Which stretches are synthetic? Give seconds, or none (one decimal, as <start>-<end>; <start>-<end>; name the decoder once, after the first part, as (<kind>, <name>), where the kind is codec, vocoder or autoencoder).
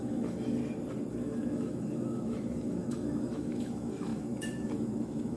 0.0-0.6 (autoencoder, DAC-VAE); 1.1-5.4